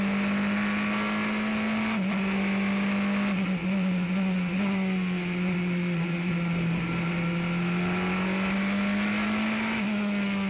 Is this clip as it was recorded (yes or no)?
yes